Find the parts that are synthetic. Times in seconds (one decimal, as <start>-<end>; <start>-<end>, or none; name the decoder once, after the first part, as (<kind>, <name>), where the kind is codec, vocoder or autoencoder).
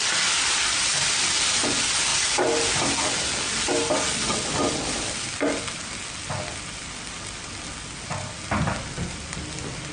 none